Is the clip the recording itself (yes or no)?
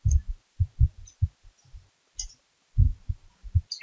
yes